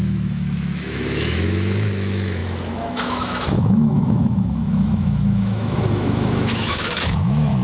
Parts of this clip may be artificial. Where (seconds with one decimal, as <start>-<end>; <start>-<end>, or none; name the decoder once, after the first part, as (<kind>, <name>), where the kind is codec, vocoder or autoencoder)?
0.0-7.6 (autoencoder, DAC-VAE)